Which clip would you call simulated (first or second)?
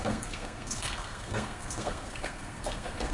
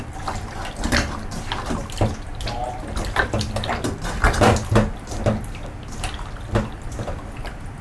first